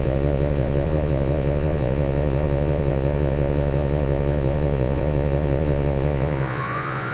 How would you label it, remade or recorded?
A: remade